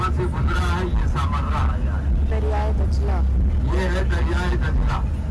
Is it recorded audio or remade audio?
recorded